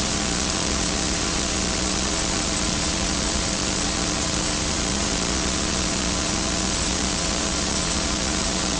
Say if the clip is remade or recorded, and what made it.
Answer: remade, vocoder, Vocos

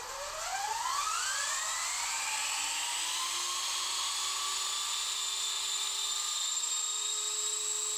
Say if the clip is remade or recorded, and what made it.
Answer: recorded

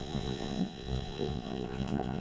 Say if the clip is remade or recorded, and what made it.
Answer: remade, vocoder, Vocos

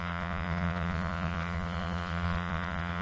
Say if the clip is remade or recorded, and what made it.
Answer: remade, vocoder, Vocos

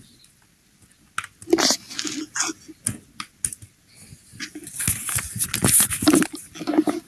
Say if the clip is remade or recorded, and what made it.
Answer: recorded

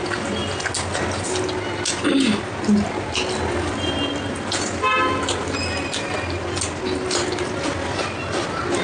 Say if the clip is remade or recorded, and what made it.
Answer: recorded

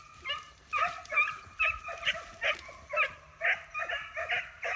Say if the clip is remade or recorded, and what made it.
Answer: recorded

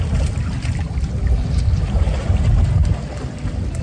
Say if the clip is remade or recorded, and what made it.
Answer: recorded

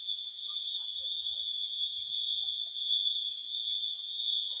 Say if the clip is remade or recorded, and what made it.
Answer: remade, vocoder, Vocos